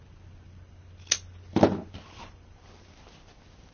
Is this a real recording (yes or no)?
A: yes